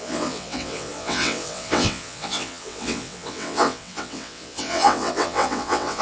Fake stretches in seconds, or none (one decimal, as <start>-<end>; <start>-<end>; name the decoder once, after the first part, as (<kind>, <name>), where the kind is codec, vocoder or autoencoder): 0.0-6.0 (vocoder, WaveNeXt)